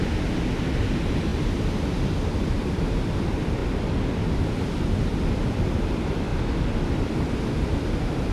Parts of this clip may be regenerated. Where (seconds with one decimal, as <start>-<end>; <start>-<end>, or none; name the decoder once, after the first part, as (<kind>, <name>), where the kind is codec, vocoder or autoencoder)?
0.0-1.3 (vocoder, BigVGAN v2); 2.4-3.6; 4.8-6.3; 7.1-8.3

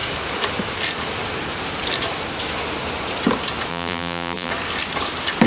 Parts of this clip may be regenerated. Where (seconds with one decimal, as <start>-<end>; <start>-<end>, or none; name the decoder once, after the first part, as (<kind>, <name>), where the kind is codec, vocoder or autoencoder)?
3.7-4.5 (vocoder, BigVGAN v2)